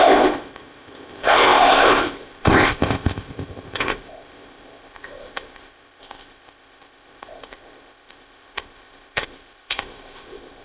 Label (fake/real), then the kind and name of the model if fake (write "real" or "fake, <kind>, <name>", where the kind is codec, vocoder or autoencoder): fake, codec, ZipCodec